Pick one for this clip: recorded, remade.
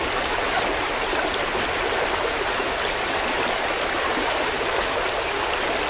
recorded